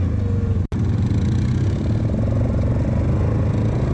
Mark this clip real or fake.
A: real